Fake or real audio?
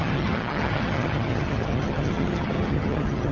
fake